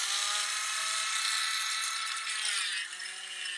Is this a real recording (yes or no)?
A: no